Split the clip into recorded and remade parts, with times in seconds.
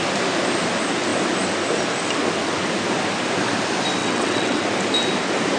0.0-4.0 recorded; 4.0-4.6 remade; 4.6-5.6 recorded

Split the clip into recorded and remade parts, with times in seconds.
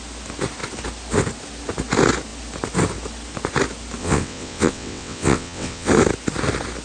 0.0-4.0 recorded; 4.0-5.9 remade; 5.9-6.8 recorded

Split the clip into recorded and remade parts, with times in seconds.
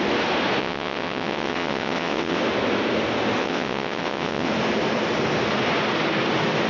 0.0-0.6 recorded; 0.6-2.4 remade; 2.4-3.4 recorded; 3.4-4.5 remade; 4.5-6.7 recorded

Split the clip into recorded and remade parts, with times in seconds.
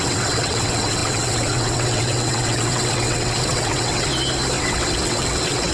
0.0-4.1 remade; 4.1-4.6 recorded; 4.6-5.7 remade